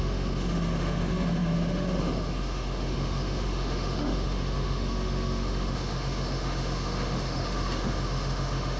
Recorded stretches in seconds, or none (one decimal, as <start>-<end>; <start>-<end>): none